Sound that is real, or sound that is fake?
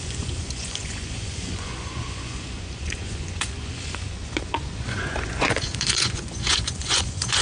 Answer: fake